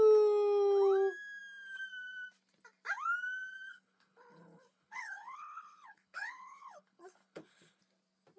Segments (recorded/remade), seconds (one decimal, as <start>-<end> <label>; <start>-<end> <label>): 0.0-3.7 recorded; 3.7-7.8 remade; 7.8-8.4 recorded